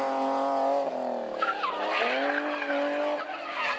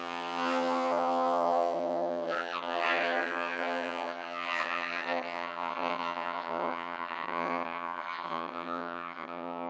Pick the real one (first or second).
first